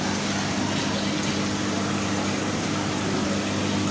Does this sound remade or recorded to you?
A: recorded